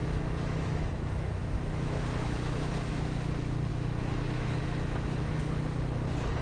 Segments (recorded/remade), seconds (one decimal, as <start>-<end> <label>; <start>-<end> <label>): 0.0-3.2 remade; 3.2-3.7 recorded; 3.7-5.4 remade; 5.4-6.4 recorded